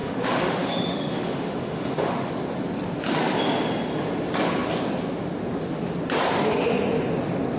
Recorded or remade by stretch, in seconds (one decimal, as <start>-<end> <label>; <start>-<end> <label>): 0.0-2.3 remade; 2.3-7.6 recorded